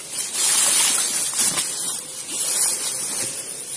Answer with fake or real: real